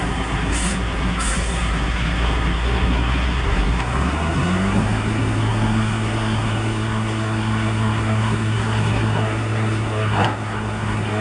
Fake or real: fake